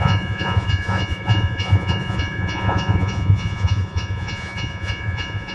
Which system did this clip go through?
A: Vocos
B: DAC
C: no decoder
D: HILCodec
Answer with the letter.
A